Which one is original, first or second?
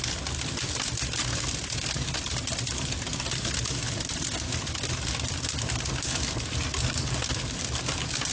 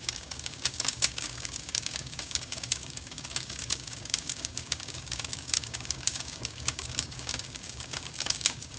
first